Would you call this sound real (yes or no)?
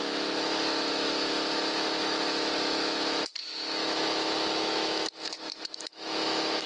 no